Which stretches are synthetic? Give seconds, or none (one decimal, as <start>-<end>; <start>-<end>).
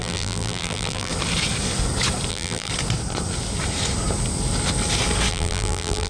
0.0-1.1; 2.3-2.7; 5.3-6.1